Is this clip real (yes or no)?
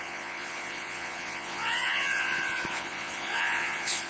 no